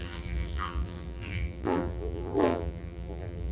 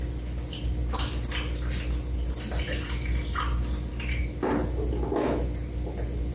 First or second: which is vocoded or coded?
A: first